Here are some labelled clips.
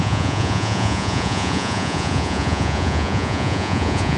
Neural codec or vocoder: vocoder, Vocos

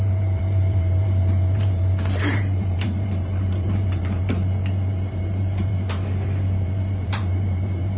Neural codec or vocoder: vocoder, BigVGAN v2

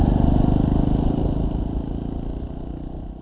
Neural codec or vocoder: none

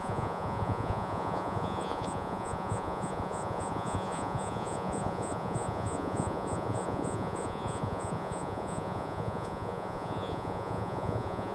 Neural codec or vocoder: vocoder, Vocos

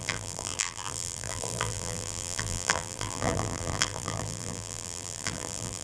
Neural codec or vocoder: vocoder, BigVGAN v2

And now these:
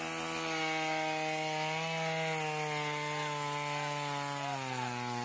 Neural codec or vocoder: none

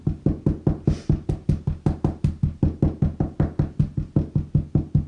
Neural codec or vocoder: none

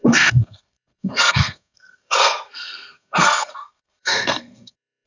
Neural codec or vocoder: codec, SNAC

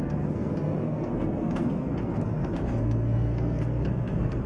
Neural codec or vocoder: codec, SNAC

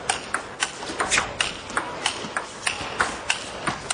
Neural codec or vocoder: none